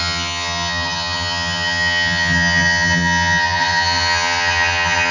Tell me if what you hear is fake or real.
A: fake